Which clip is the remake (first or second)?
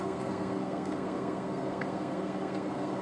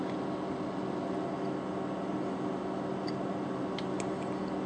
first